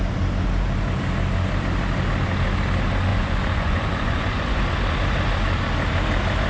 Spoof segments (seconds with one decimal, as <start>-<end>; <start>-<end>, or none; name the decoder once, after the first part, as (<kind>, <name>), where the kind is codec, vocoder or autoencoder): 3.1-4.6 (vocoder, Vocos)